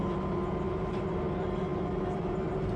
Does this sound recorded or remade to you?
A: recorded